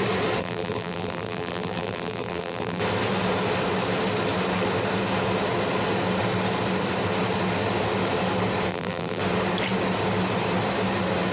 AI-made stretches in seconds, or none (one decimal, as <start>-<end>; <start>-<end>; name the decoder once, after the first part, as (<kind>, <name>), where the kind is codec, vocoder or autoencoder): 0.4-2.8 (vocoder, BigVGAN v2); 8.7-9.2